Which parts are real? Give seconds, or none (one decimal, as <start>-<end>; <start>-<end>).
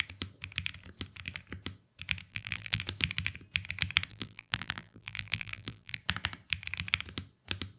0.0-2.3; 2.8-4.1; 6.0-7.8